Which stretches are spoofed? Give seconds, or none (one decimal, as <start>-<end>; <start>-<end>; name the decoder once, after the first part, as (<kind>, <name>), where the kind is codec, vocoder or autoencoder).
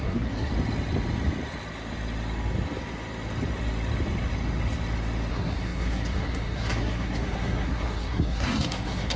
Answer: 0.0-0.5 (codec, SNAC); 5.3-9.2